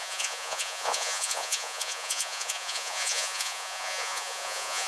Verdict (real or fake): fake